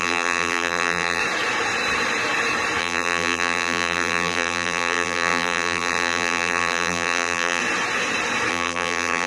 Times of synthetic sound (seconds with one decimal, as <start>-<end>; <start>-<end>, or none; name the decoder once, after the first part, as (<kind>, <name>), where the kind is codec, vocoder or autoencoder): 0.0-1.2 (vocoder, BigVGAN v2); 2.8-7.6; 8.5-9.3